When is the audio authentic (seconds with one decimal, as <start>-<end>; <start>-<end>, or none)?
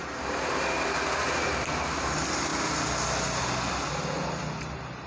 0.0-5.1